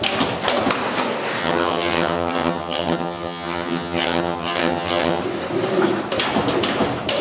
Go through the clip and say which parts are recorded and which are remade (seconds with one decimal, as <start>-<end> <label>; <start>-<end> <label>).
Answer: 0.0-1.4 recorded; 1.4-5.2 remade; 5.2-7.2 recorded